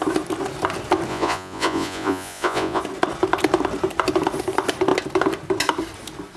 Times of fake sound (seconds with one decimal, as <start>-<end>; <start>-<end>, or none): 1.1-2.8